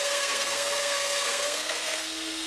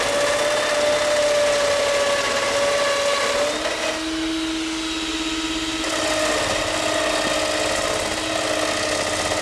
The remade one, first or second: first